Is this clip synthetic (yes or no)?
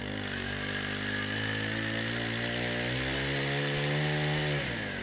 no